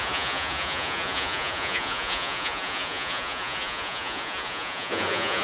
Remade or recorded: remade